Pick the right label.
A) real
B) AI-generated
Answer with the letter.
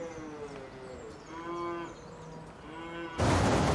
A